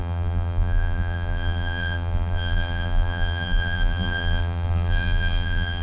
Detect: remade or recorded remade